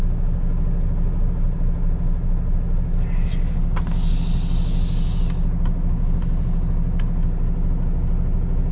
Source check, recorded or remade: recorded